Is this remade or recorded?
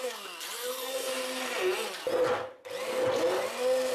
recorded